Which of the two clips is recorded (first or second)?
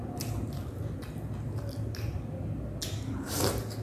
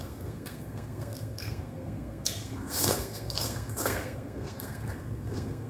first